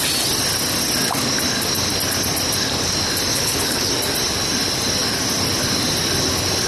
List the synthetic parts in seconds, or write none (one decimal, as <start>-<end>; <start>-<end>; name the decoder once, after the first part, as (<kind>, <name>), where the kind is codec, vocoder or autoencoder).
3.3-3.9 (codec, HILCodec)